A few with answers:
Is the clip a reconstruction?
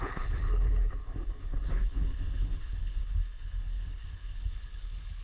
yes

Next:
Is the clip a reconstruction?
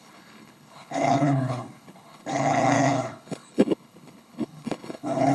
yes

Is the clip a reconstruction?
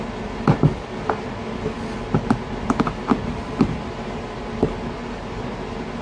no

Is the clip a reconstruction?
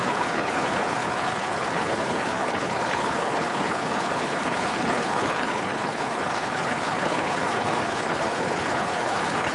yes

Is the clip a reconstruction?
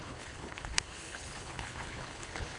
yes